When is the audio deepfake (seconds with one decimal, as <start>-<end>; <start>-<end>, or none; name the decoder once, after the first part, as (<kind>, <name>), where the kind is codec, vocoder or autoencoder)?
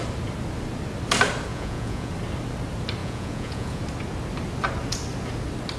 1.5-2.1 (vocoder, Vocos); 3.0-3.8